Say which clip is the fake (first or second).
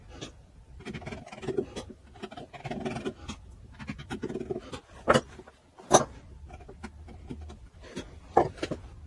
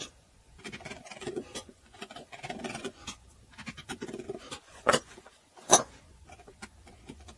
second